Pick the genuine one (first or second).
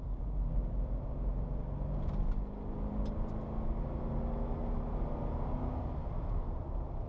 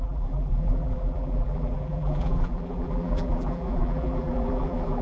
first